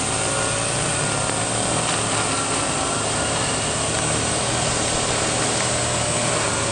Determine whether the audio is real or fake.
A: real